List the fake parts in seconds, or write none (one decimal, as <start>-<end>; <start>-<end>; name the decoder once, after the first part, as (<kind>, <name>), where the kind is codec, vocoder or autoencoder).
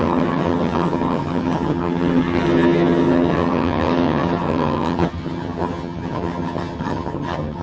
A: 0.0-7.6 (vocoder, HiFi-GAN)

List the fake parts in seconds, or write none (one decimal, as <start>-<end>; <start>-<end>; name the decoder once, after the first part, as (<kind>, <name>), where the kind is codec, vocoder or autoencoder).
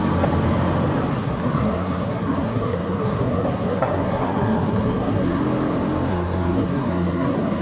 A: 1.1-5.4 (codec, SNAC); 6.1-7.6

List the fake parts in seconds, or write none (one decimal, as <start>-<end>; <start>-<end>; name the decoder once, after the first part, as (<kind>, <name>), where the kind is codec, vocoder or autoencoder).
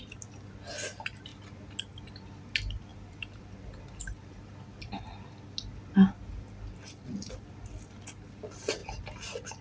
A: 2.9-4.9 (vocoder, BigVGAN v2); 8.8-9.6